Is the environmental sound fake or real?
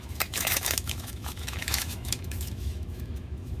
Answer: fake